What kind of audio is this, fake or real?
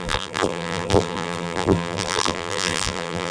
fake